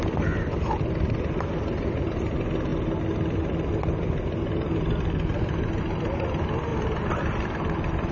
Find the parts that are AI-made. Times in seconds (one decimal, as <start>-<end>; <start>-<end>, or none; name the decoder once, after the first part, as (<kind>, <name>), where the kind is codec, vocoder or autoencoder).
6.7-8.1 (vocoder, BigVGAN v2)

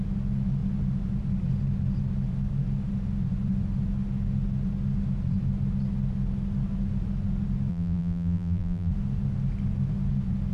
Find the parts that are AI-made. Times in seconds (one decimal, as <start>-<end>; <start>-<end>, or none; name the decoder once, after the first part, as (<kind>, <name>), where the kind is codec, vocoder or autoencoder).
7.7-8.9 (vocoder, BigVGAN v2)

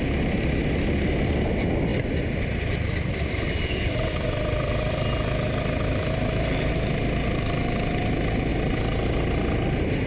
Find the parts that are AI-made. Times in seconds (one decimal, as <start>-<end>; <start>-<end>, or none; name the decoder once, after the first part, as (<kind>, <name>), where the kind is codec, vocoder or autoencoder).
1.9-6.7 (vocoder, BigVGAN v2)

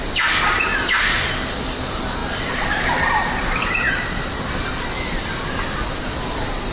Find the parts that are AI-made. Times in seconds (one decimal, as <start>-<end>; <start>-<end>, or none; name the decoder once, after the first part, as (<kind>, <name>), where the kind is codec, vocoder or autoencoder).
none

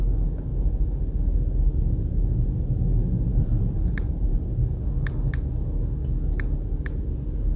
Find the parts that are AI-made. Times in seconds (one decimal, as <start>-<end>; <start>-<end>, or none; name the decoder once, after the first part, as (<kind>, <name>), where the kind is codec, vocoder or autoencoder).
0.5-1.0 (vocoder, BigVGAN v2); 3.3-4.8

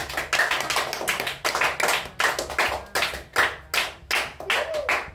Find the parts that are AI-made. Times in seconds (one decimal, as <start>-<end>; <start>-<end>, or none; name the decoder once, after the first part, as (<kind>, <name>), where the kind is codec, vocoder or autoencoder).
none

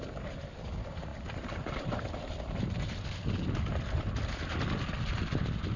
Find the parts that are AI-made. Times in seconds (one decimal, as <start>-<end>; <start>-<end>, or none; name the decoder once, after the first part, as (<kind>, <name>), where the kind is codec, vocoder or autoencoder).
none

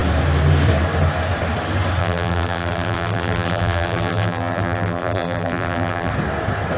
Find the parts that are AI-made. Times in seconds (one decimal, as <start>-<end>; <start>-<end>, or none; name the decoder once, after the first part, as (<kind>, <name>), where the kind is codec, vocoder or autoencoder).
2.0-6.1 (vocoder, BigVGAN v2)